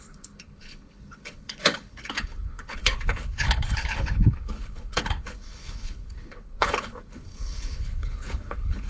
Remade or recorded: remade